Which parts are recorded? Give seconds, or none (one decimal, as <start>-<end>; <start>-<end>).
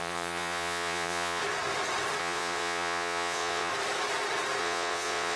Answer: 1.4-2.2; 3.7-4.6